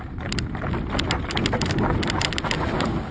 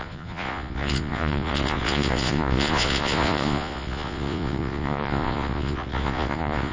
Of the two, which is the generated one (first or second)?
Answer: second